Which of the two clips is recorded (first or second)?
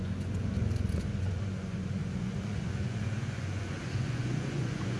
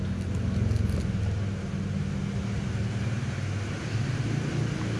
second